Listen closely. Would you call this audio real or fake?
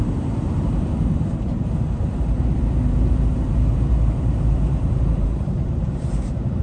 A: fake